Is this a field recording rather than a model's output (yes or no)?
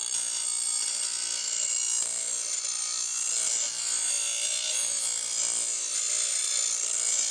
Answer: yes